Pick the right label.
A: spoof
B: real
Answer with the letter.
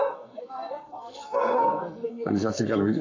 A